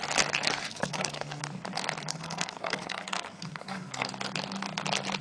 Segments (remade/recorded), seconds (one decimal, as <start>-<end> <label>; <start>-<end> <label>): 0.0-0.7 recorded; 0.7-1.4 remade; 1.4-2.1 recorded; 2.1-4.1 remade; 4.1-5.2 recorded